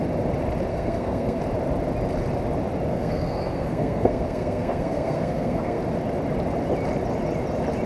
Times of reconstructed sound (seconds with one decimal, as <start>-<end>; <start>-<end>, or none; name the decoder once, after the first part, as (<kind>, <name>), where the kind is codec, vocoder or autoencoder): 0.7-1.4 (codec, SNAC); 2.9-5.8